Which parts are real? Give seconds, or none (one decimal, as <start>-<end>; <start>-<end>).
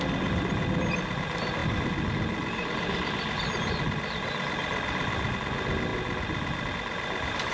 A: 0.0-7.5